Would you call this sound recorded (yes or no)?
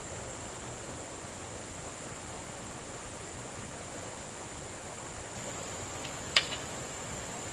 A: no